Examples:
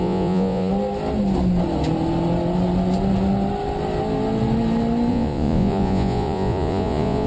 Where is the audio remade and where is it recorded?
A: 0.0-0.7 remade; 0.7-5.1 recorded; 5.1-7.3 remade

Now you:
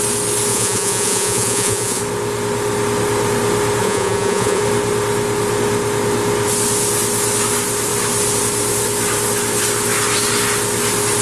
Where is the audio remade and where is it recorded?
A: 0.0-0.5 recorded; 0.5-2.0 remade; 2.0-3.8 recorded; 3.8-4.6 remade; 4.6-11.2 recorded